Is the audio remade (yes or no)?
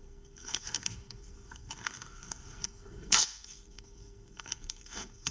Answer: yes